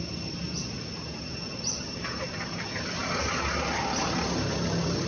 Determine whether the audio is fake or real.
real